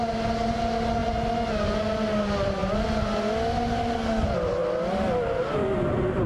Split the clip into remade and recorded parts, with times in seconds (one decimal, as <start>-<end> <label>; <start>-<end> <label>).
0.0-6.3 recorded